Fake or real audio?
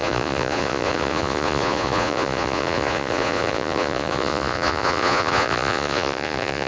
fake